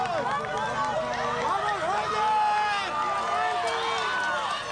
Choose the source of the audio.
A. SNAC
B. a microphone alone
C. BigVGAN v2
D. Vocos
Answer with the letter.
B